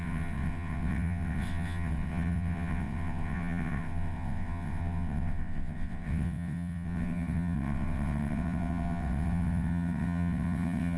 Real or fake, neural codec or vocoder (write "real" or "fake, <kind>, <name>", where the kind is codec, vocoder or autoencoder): fake, vocoder, WaveNeXt